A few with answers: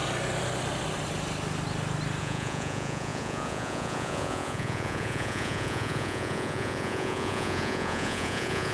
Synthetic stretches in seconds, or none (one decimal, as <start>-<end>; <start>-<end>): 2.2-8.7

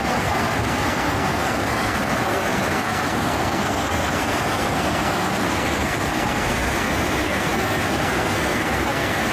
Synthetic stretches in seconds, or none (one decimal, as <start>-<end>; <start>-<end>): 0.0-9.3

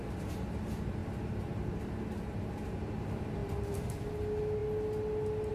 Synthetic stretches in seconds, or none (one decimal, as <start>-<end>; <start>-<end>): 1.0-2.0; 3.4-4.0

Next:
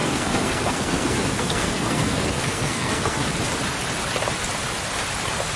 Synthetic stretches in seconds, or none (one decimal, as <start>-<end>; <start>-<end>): 0.0-3.3

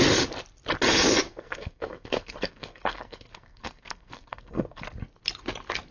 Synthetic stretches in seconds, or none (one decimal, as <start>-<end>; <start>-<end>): 1.3-4.8